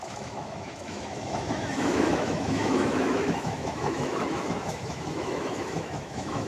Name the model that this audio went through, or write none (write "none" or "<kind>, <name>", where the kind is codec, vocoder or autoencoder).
autoencoder, DAC-VAE